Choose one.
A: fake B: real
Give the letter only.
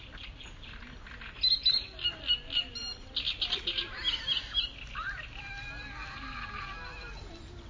B